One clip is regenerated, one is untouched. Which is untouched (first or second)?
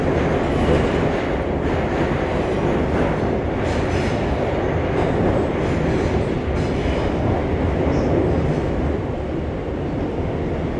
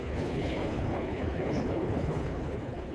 first